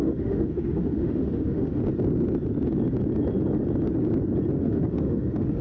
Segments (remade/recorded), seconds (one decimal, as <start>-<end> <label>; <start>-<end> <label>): 0.0-1.8 remade; 1.8-4.5 recorded; 4.5-5.6 remade